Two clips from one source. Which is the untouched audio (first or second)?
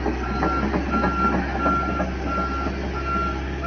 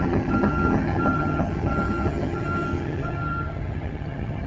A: first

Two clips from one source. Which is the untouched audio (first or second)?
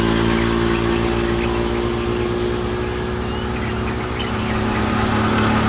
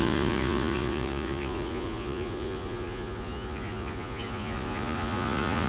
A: first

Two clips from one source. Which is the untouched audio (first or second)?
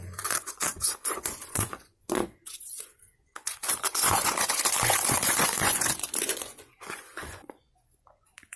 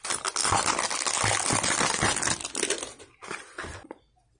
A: second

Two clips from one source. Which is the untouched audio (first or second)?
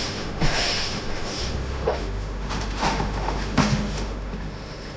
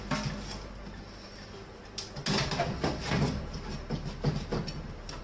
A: second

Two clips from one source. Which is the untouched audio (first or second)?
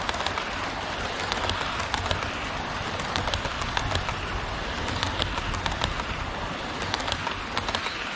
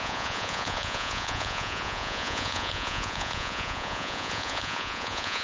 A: first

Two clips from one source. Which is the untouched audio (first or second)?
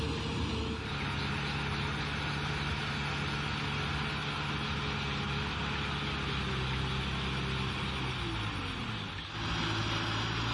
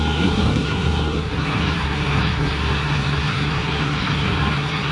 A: first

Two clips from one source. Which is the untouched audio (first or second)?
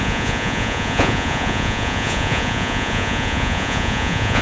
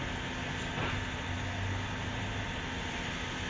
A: second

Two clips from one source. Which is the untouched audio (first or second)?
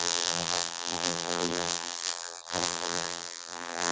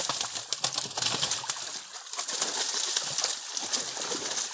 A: second